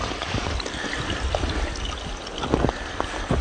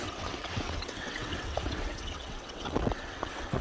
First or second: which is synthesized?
second